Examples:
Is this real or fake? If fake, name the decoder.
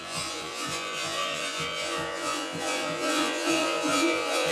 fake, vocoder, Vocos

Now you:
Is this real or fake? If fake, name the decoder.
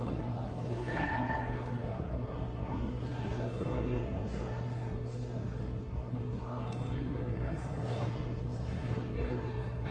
fake, codec, SNAC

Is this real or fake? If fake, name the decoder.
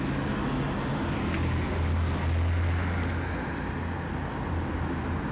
real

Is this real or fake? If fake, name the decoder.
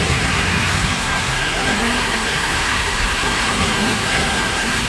fake, codec, SNAC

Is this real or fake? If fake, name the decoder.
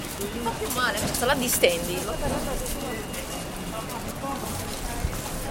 real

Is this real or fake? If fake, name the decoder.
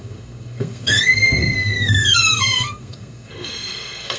fake, codec, SNAC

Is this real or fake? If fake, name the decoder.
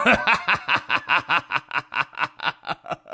real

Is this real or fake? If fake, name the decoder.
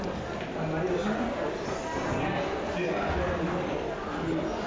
real